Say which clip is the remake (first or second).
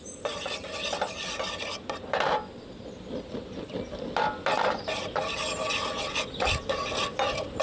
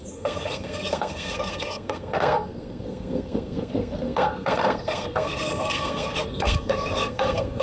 second